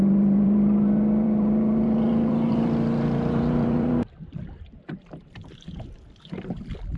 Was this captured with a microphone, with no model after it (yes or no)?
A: no